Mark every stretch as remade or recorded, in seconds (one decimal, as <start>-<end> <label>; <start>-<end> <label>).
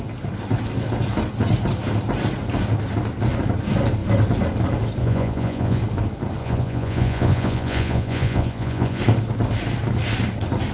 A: 0.0-5.0 recorded; 5.0-5.8 remade; 5.8-6.4 recorded; 6.4-9.0 remade; 9.0-10.7 recorded